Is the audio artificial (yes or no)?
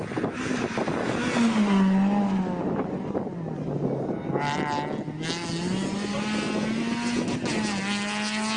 no